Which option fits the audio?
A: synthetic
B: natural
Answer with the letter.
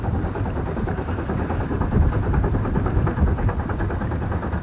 A